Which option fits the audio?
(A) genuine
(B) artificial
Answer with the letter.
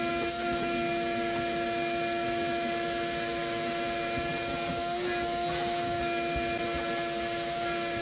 A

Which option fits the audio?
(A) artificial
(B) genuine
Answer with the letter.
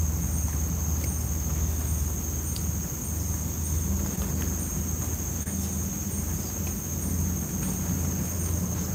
B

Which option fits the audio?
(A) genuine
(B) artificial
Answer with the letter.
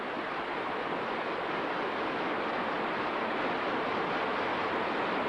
A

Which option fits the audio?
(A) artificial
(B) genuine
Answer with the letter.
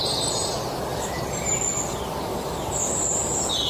B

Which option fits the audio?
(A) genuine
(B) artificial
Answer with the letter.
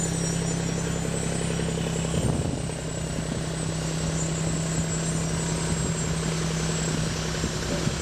A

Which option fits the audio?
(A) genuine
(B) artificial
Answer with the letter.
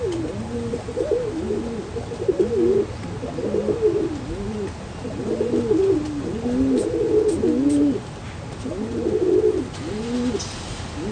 A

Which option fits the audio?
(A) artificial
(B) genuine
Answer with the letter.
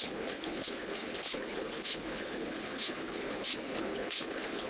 A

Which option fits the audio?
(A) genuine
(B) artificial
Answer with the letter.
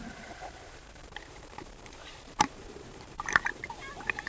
B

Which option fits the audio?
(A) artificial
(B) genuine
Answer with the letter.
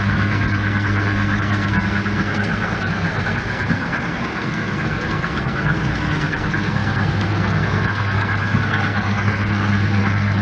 A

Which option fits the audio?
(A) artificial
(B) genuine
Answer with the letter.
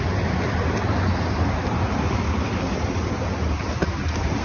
B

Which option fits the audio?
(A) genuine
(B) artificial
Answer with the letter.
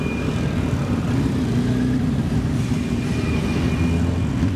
A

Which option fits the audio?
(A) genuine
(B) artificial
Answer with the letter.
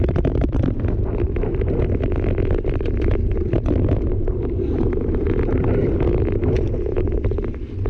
A